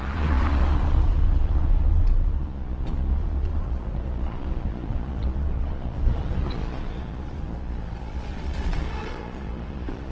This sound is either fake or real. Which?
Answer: fake